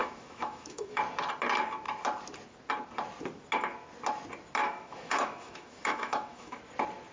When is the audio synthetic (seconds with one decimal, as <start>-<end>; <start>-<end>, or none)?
0.0-1.0; 4.6-6.6